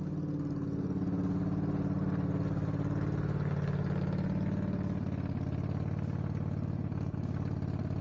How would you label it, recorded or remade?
recorded